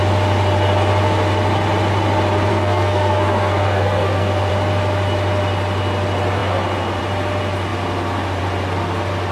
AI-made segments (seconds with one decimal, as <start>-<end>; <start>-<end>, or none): 2.5-4.5